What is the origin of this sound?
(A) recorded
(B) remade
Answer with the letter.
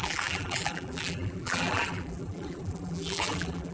B